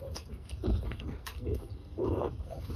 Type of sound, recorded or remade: remade